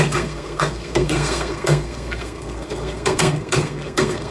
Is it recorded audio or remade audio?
remade